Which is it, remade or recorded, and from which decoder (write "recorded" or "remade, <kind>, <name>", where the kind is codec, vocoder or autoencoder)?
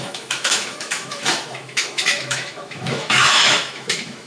remade, autoencoder, DAC-VAE